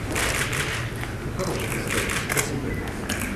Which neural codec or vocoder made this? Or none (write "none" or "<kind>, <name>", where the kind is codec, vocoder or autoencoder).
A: none